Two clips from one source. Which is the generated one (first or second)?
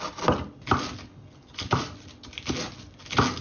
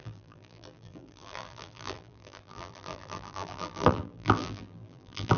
second